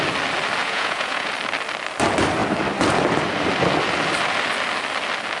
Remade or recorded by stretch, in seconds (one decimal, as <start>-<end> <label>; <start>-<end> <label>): 0.0-0.6 recorded; 0.6-1.3 remade; 1.3-5.4 recorded